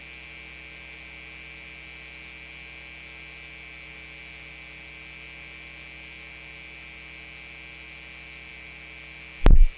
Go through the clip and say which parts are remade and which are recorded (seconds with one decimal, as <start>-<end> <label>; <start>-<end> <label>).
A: 0.0-9.8 recorded